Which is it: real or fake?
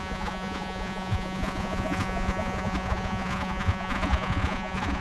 fake